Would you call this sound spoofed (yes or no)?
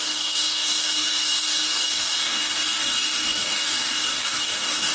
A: yes